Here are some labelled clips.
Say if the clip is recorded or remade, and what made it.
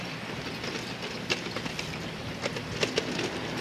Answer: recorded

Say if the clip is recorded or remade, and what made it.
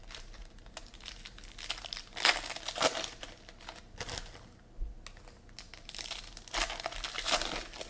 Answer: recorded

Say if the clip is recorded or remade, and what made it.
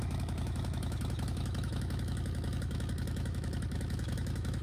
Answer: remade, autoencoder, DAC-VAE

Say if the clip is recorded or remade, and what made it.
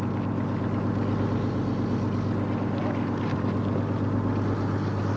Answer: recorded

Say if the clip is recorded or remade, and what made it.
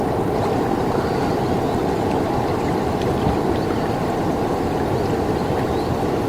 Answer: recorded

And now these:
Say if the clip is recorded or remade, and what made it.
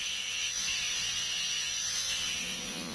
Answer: remade, vocoder, Vocos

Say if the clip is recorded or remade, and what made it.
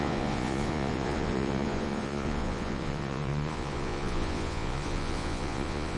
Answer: remade, vocoder, Vocos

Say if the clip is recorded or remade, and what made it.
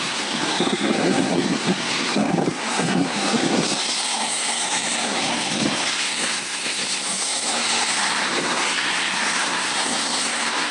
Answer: remade, codec, SNAC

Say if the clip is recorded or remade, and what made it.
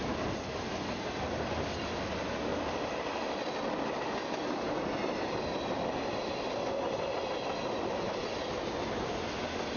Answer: recorded